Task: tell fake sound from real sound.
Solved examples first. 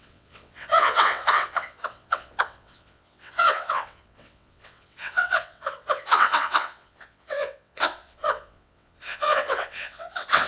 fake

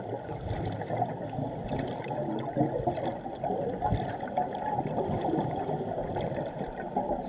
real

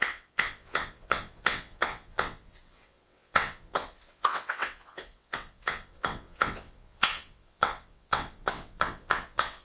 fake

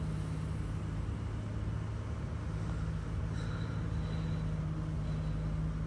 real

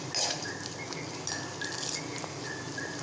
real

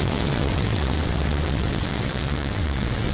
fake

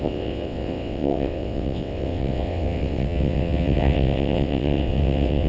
fake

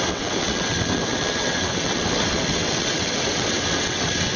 fake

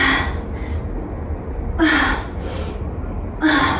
real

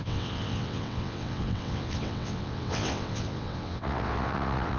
fake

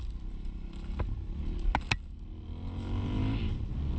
real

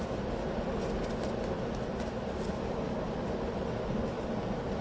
real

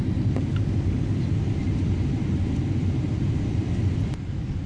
real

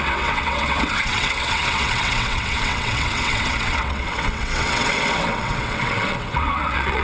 fake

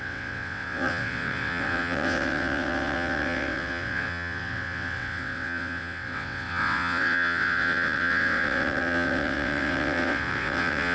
fake